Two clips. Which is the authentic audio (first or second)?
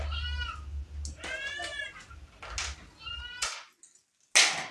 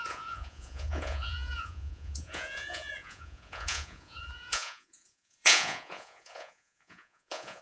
first